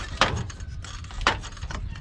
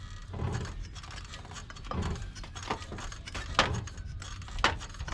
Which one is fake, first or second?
first